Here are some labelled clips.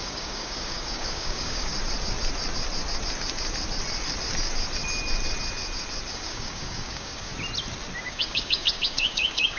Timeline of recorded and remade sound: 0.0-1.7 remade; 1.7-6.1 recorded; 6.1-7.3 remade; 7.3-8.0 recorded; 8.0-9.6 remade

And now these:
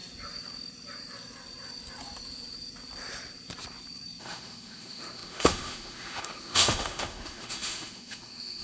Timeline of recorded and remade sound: 0.0-4.2 recorded; 4.2-8.6 remade

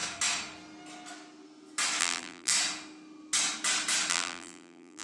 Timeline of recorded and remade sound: 0.0-2.0 recorded; 2.0-2.5 remade; 2.5-4.1 recorded; 4.1-5.0 remade

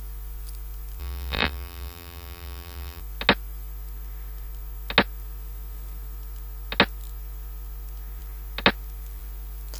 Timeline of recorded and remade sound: 0.0-1.0 recorded; 1.0-3.0 remade; 3.0-9.8 recorded

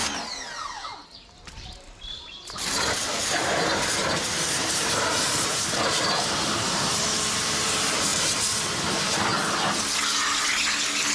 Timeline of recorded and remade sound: 0.0-1.3 recorded; 1.3-4.0 remade; 4.0-4.5 recorded; 4.5-9.3 remade; 9.3-11.1 recorded

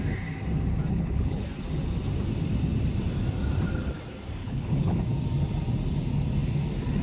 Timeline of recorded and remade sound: 0.0-0.9 recorded; 0.9-1.4 remade; 1.4-4.4 recorded; 4.4-5.0 remade; 5.0-7.0 recorded

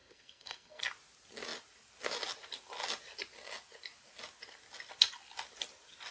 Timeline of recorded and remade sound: 0.0-0.8 remade; 0.8-6.1 recorded